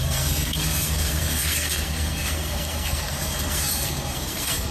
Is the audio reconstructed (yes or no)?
yes